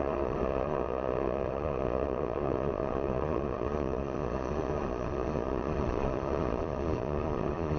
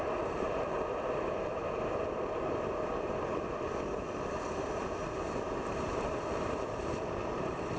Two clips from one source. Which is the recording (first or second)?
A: second